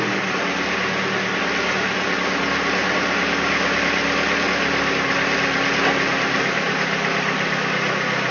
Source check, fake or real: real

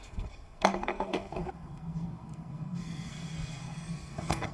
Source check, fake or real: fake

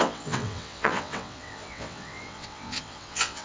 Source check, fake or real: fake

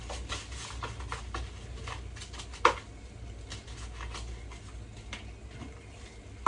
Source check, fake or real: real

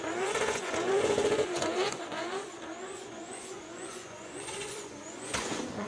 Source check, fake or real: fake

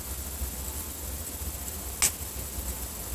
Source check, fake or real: real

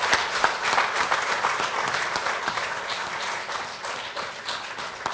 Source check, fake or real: real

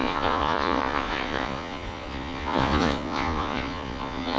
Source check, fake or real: fake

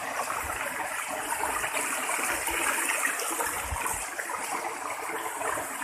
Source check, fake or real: real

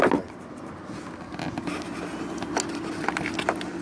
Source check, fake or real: real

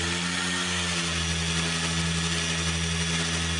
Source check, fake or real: real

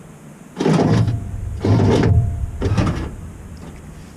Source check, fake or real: real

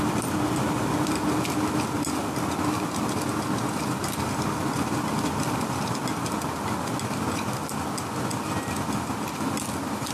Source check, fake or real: real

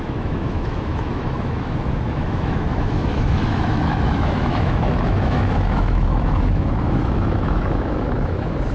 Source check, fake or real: fake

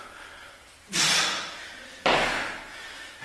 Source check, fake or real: real